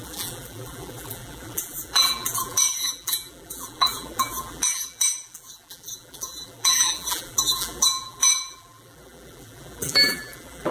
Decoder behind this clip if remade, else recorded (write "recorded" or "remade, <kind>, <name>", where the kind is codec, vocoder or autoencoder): remade, vocoder, BigVGAN v2